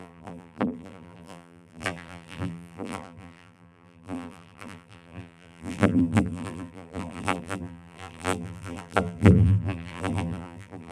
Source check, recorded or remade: remade